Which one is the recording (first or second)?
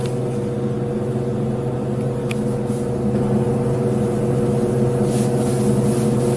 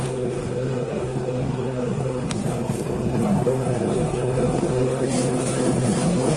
first